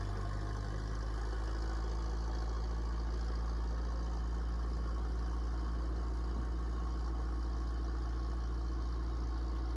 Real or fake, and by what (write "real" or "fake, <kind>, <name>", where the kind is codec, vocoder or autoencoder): real